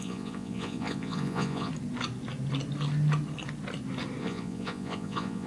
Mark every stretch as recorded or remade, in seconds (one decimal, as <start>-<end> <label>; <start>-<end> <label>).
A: 0.0-1.7 remade; 1.7-4.2 recorded; 4.2-5.5 remade